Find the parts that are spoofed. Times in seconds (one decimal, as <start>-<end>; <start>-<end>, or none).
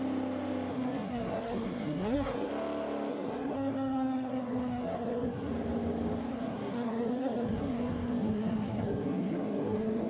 0.7-2.5; 3.1-5.5; 6.3-10.1